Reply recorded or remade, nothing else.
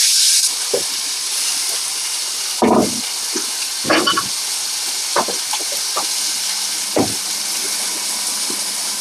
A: recorded